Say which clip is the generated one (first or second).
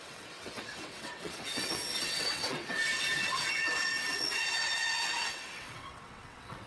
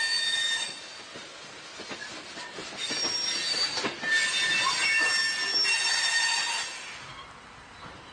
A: first